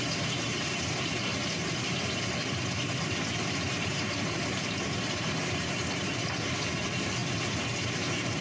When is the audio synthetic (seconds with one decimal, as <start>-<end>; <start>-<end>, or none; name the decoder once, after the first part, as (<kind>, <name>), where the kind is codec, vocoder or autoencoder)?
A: 0.0-8.4 (vocoder, BigVGAN v2)